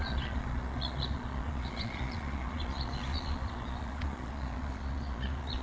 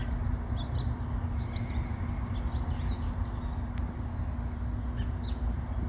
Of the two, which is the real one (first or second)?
second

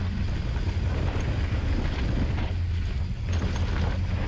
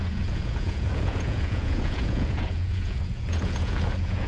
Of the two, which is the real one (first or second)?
first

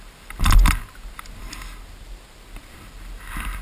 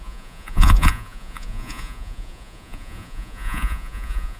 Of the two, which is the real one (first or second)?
first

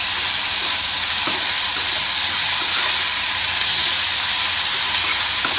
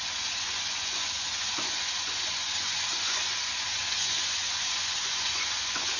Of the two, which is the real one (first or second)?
first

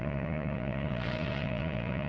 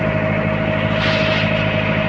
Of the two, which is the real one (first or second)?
second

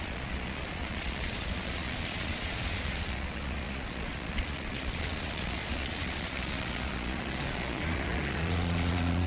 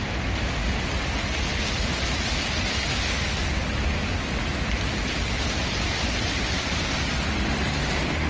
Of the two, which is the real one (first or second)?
second